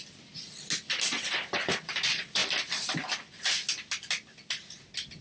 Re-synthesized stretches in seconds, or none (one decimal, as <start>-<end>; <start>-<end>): none